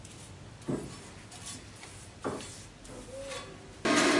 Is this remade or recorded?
recorded